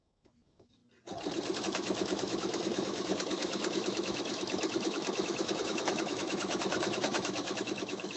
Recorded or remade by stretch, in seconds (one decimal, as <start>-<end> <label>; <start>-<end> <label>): 0.0-0.8 remade; 0.8-1.6 recorded; 1.6-8.2 remade